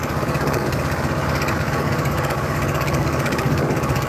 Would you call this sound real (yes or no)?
no